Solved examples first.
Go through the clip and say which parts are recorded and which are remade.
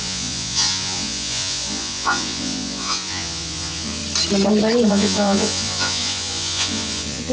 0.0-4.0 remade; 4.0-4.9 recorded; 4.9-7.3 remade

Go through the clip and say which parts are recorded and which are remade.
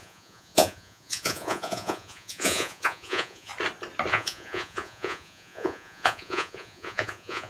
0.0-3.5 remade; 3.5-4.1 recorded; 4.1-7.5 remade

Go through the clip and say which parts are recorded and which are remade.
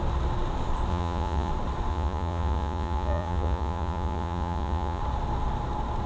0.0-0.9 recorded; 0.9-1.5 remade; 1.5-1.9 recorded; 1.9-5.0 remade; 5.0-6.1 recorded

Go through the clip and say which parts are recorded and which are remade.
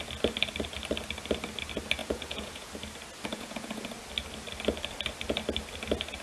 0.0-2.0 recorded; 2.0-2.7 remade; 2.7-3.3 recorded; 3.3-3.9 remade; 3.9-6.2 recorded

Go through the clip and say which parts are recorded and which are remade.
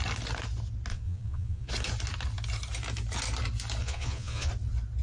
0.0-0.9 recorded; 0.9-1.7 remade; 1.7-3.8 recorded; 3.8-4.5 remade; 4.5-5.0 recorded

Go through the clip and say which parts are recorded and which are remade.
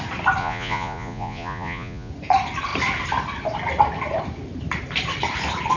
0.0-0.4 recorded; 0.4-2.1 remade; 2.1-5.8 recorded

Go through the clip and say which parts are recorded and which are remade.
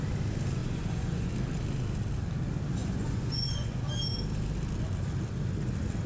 0.0-0.6 recorded; 0.6-1.3 remade; 1.3-2.8 recorded; 2.8-3.8 remade; 3.8-6.1 recorded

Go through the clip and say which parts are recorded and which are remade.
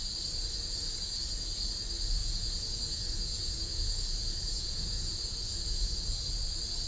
0.0-2.2 recorded; 2.2-6.3 remade; 6.3-6.9 recorded